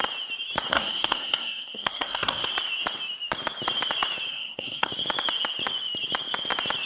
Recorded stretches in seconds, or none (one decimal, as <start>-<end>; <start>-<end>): 0.0-0.7; 2.5-4.3; 4.9-6.9